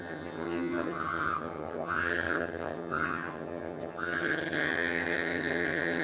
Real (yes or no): no